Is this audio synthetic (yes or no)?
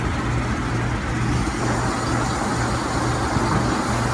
no